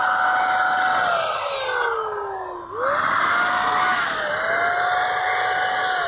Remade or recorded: recorded